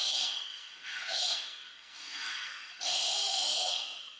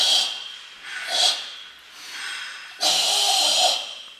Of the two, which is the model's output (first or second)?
first